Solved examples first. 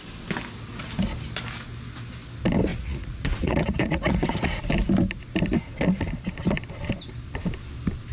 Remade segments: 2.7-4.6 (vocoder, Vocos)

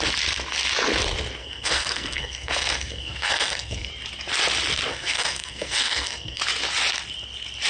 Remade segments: 1.4-3.9 (codec, SNAC); 4.9-6.4

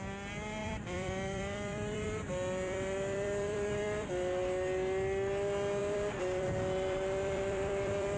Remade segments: 0.6-4.1 (vocoder, BigVGAN v2); 5.8-8.2